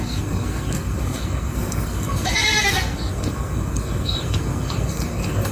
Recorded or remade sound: remade